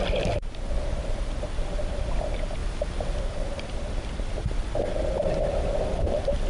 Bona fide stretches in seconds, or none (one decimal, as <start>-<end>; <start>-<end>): 2.6-3.2